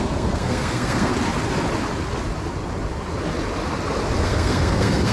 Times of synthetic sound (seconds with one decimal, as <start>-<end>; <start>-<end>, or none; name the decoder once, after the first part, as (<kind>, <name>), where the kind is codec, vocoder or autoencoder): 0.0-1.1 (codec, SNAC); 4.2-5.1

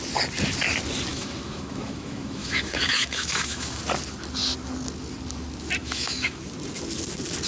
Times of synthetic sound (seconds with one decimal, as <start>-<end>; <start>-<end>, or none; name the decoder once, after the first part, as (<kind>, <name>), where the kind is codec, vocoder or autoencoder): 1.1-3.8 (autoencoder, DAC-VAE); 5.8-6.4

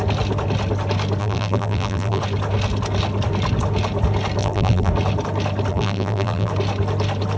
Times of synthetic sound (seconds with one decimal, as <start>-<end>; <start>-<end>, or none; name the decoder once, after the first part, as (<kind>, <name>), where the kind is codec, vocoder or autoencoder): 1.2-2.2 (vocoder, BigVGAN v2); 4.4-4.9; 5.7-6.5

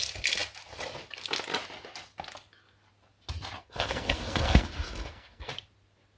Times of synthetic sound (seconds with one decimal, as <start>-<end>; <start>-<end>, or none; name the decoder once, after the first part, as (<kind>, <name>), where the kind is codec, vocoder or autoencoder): 3.6-5.5 (codec, SNAC)